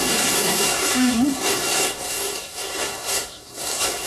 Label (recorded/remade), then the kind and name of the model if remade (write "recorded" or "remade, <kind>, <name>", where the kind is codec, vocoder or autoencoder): remade, codec, SNAC